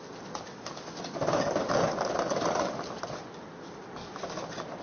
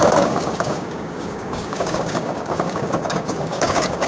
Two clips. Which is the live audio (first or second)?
first